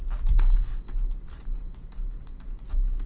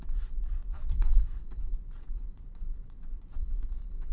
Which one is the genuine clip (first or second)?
first